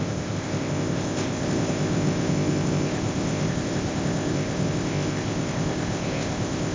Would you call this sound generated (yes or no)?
yes